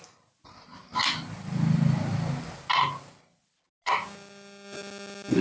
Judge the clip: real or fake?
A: real